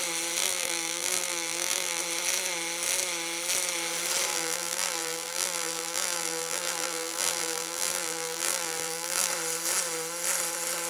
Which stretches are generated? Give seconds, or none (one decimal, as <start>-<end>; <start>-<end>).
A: 0.4-2.0; 4.3-9.3